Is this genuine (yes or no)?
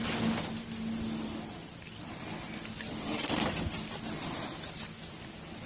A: yes